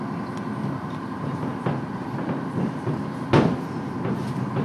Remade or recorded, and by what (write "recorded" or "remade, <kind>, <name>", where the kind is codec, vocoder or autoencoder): recorded